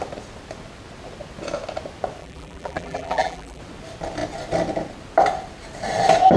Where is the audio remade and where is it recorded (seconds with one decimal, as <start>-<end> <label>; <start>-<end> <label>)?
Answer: 0.0-2.2 recorded; 2.2-3.6 remade; 3.6-6.4 recorded